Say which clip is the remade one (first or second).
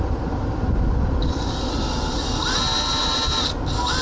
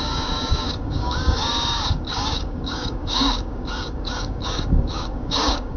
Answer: second